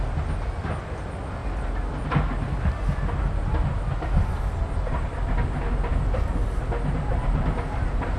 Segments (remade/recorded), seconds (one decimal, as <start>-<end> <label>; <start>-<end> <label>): 0.0-8.2 recorded